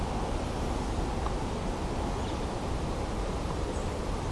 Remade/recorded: recorded